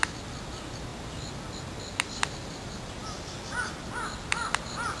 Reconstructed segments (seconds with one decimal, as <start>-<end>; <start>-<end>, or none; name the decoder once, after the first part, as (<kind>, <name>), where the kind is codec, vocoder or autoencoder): none